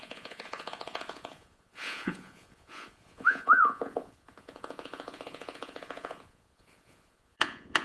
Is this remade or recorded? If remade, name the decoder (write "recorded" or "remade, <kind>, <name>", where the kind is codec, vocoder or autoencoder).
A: remade, vocoder, Vocos